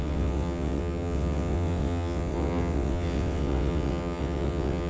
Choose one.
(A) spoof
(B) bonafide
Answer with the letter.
A